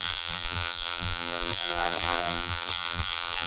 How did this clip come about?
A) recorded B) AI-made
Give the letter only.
B